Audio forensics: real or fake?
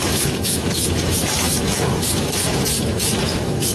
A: fake